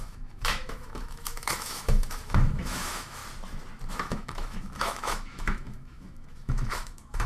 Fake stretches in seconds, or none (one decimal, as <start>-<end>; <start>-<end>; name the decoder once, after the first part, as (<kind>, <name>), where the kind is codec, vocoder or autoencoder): 0.0-3.2 (autoencoder, DAC-VAE); 3.9-7.3